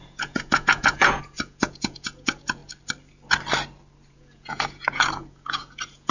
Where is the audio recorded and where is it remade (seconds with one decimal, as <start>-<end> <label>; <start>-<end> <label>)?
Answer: 0.0-2.6 remade; 2.6-4.1 recorded; 4.1-6.1 remade

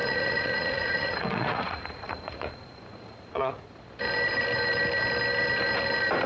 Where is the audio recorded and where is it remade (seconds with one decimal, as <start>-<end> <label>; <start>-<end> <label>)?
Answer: 0.0-3.8 remade; 3.8-6.3 recorded

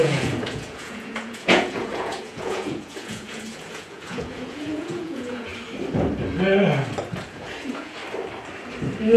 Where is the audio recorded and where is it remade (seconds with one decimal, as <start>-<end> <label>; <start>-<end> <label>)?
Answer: 0.0-5.5 remade; 5.5-7.3 recorded; 7.3-8.0 remade; 8.0-9.2 recorded

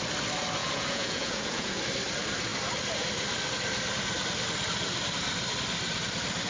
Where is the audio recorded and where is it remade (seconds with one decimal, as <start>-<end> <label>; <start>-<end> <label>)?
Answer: 0.0-0.6 recorded; 0.6-1.8 remade; 1.8-6.5 recorded

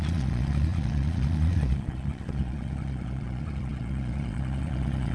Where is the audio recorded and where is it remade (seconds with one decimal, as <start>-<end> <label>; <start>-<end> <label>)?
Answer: 0.0-5.1 remade

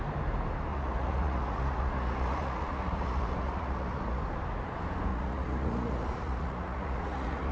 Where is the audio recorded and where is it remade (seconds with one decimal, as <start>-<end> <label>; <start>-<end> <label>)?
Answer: 0.0-0.7 recorded; 0.7-4.2 remade; 4.2-5.1 recorded; 5.1-7.5 remade

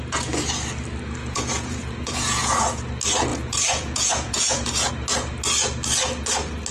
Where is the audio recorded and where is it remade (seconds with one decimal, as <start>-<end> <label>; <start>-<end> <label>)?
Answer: 0.0-1.2 recorded; 1.2-2.8 remade; 2.8-3.3 recorded; 3.3-4.9 remade; 4.9-6.7 recorded